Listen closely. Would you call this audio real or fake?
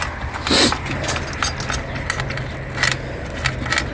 real